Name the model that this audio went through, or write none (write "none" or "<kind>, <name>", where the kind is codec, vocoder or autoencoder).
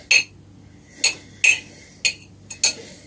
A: none